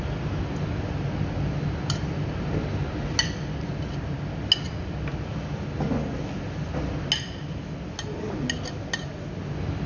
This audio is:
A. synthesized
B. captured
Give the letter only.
B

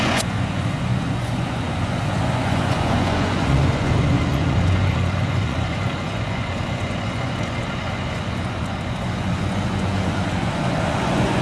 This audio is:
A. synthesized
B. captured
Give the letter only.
A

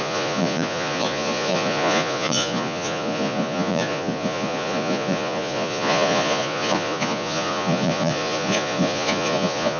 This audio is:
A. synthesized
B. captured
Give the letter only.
A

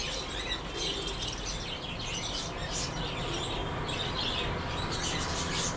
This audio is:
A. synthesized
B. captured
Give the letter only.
B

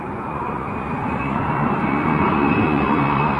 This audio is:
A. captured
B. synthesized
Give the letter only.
B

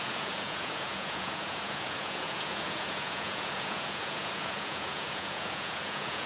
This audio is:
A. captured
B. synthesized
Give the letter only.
B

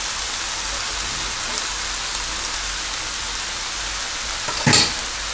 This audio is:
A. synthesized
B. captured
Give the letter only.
B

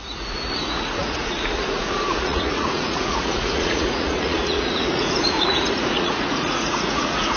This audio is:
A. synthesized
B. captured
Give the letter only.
A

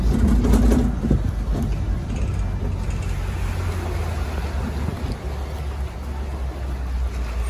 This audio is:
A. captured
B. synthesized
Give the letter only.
A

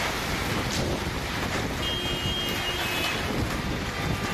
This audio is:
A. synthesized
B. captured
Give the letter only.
B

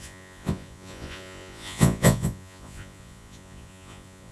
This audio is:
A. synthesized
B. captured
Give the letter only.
A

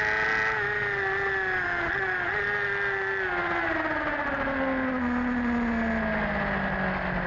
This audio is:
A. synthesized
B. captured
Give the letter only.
B